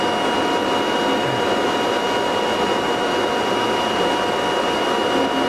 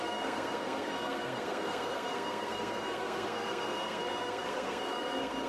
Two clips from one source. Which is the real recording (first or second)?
first